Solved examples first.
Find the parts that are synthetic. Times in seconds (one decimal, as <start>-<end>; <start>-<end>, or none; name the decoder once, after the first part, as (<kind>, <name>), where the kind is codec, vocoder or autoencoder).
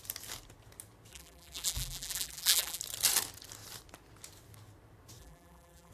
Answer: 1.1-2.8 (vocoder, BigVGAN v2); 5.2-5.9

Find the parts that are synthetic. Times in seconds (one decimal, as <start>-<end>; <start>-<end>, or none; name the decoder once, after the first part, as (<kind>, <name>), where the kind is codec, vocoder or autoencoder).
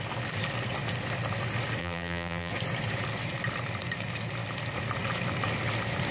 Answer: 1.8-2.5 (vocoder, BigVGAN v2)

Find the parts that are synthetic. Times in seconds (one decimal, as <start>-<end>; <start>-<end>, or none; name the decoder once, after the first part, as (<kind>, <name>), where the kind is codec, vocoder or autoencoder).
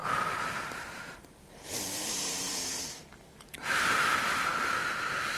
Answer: 0.0-3.2 (vocoder, BigVGAN v2)